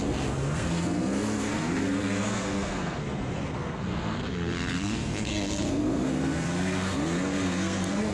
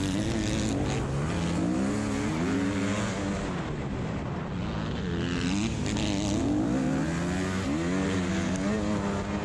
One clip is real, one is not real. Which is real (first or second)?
second